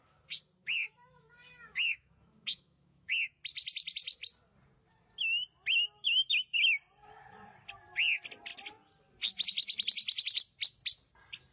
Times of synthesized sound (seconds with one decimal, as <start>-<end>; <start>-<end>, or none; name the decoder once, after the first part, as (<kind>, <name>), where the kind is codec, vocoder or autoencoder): 0.6-3.4 (autoencoder, DAC-VAE)